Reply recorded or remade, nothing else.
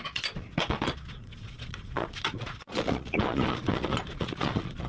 remade